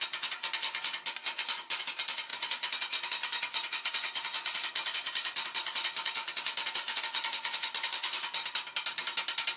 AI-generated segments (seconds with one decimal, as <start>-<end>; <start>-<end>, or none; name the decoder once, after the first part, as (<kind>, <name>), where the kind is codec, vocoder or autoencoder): 0.0-8.4 (vocoder, Vocos)